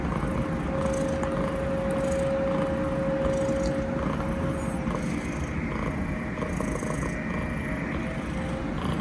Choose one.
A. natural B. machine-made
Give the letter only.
A